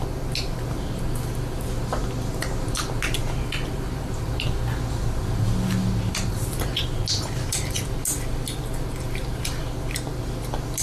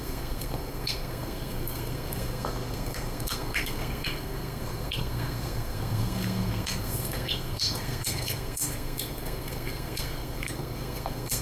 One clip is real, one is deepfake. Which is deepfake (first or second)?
second